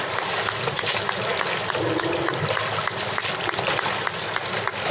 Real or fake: real